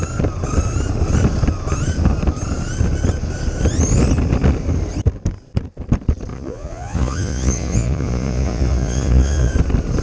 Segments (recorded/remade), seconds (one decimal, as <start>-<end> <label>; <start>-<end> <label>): 0.0-6.3 recorded; 6.3-9.5 remade; 9.5-10.0 recorded